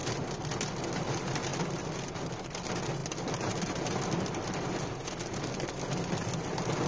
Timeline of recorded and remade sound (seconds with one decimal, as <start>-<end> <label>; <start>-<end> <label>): 0.0-6.9 recorded